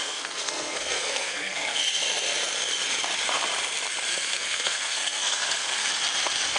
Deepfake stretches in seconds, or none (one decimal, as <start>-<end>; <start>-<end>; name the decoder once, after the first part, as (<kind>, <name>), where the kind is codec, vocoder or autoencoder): 0.0-1.8 (codec, SNAC); 4.1-5.9